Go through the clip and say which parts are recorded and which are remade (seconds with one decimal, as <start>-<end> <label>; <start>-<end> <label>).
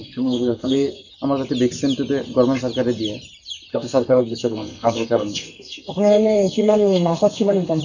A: 0.0-1.1 remade; 1.1-3.7 recorded; 3.7-7.8 remade